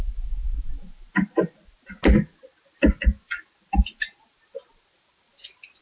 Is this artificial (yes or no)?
no